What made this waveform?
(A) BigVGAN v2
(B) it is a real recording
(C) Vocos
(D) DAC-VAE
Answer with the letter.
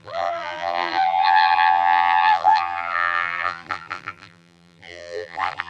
A